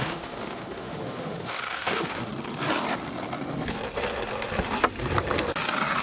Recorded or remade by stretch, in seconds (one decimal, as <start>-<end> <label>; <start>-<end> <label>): 0.0-2.3 remade; 2.3-6.0 recorded